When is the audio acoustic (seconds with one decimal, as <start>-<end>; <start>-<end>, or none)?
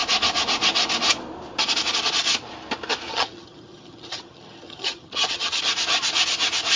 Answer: 0.0-3.1; 5.6-6.8